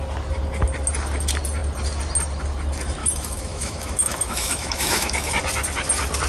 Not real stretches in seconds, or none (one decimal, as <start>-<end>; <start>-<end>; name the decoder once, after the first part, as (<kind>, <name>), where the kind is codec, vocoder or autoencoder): 3.0-5.3 (autoencoder, DAC-VAE)